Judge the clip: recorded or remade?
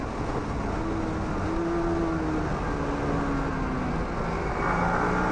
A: recorded